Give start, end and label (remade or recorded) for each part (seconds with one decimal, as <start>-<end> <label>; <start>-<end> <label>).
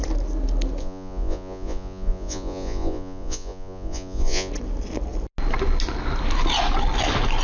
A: 0.0-0.8 recorded; 0.8-4.5 remade; 4.5-7.4 recorded